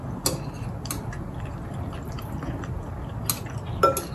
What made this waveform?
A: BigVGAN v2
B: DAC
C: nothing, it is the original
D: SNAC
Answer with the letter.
C